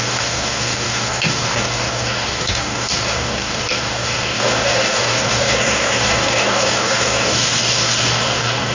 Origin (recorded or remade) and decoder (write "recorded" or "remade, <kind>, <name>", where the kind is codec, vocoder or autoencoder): remade, codec, DAC